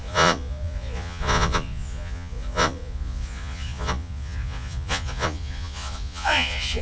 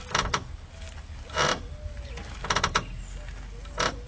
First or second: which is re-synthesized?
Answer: first